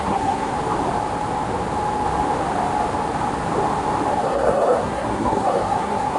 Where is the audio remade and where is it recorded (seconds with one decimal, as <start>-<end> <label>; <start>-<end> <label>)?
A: 0.0-0.5 remade; 0.5-4.2 recorded; 4.2-6.2 remade